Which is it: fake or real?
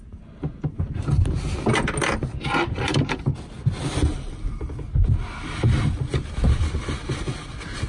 real